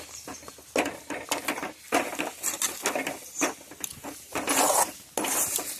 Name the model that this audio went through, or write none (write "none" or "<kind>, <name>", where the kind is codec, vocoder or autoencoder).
none